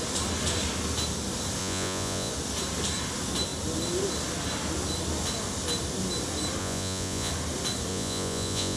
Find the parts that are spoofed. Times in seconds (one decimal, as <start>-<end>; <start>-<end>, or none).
1.6-2.3; 6.6-7.3; 7.9-8.8